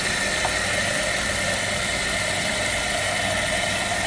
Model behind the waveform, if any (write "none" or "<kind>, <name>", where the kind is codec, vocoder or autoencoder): none